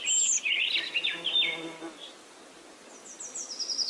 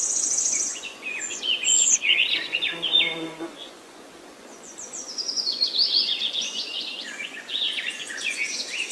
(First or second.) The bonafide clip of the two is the first